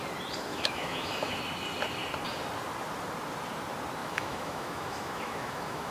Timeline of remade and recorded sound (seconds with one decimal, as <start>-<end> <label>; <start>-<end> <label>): 0.0-0.5 recorded; 0.5-1.4 remade; 1.4-4.0 recorded; 4.0-5.9 remade